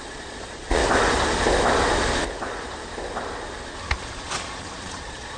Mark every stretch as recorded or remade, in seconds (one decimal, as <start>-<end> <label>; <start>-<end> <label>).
0.0-0.8 remade; 0.8-4.0 recorded; 4.0-5.4 remade